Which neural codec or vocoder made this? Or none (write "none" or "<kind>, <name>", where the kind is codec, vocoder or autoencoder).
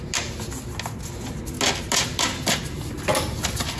none